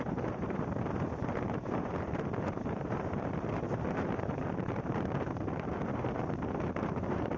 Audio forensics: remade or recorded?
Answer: remade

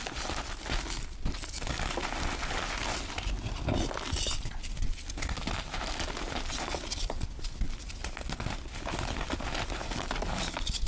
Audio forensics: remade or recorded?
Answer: recorded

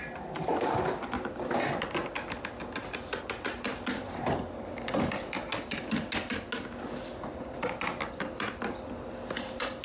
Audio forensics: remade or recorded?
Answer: recorded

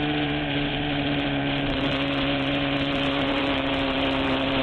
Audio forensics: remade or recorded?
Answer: remade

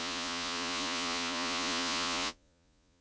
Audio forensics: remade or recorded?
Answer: remade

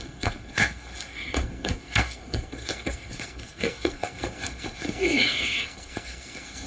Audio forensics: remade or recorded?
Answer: remade